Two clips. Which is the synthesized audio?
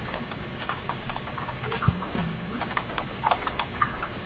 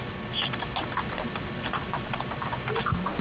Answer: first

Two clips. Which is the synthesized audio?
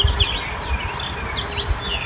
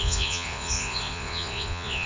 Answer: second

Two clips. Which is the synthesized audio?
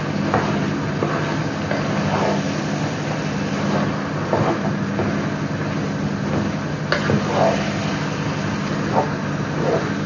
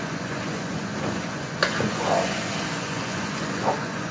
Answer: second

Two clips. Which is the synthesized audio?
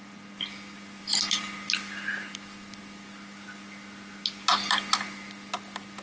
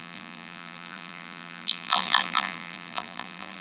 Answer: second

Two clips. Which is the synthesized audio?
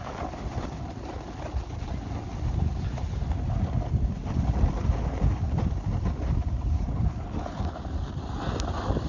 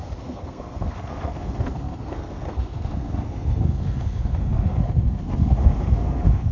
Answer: second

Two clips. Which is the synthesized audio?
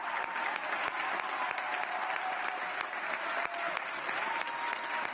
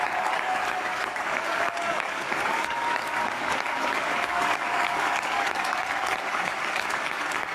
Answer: second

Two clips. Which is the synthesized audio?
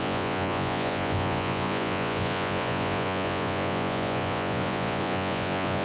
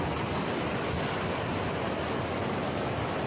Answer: first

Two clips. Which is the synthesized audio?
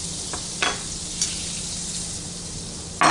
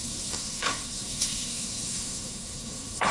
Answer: second